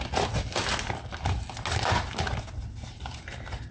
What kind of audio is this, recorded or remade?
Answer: recorded